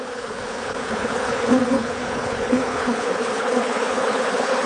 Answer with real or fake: fake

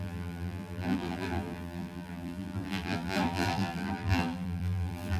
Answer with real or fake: fake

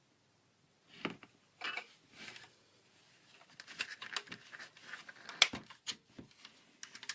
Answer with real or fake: real